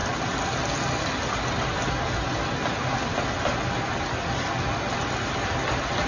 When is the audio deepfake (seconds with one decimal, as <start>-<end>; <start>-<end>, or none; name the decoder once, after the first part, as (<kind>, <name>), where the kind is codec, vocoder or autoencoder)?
none